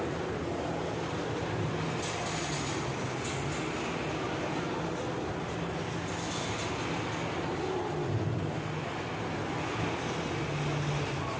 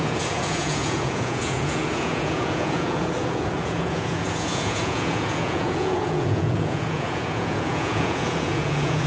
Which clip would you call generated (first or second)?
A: second